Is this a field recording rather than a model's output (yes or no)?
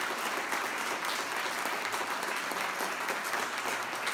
yes